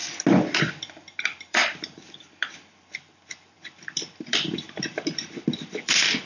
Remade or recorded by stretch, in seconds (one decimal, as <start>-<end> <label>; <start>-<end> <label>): 0.0-0.6 recorded; 0.6-6.3 remade

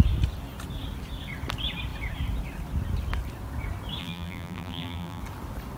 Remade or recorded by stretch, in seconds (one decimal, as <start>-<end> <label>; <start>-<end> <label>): 0.0-4.0 recorded; 4.0-5.2 remade; 5.2-5.8 recorded